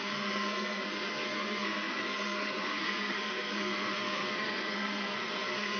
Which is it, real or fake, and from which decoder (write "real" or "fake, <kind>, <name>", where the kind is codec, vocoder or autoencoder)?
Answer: fake, codec, SNAC